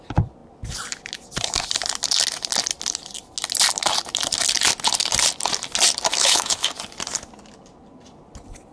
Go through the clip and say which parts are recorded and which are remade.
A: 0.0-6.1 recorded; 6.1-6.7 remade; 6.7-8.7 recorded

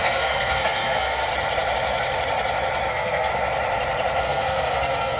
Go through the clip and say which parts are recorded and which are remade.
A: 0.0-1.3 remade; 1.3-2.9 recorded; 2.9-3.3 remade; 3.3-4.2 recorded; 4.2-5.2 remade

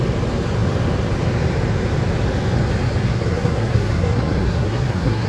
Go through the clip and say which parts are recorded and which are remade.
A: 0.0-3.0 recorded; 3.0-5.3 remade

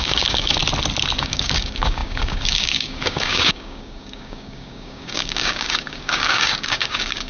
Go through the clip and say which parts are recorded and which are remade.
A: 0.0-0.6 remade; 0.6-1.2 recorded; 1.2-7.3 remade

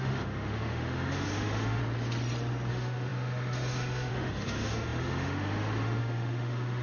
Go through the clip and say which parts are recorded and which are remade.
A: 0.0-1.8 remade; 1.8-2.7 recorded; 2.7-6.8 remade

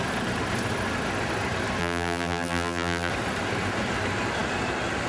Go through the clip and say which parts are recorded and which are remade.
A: 0.0-1.8 recorded; 1.8-3.1 remade; 3.1-5.1 recorded